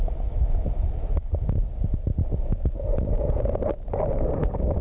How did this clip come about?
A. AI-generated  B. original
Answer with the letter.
B